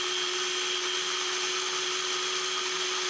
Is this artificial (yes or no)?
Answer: no